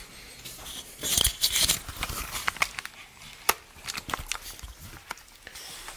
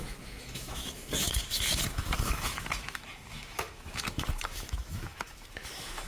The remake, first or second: second